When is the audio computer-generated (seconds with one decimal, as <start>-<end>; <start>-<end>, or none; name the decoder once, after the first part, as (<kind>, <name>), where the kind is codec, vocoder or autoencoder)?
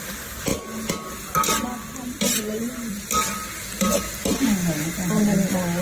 none